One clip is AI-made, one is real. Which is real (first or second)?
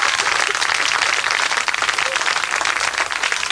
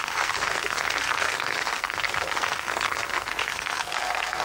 first